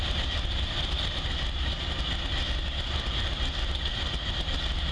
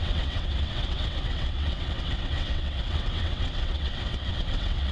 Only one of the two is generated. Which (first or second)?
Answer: second